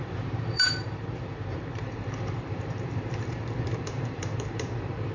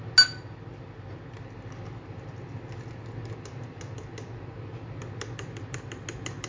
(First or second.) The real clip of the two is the second